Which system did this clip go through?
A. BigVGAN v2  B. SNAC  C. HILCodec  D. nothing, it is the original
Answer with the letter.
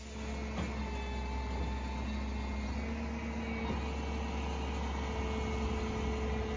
D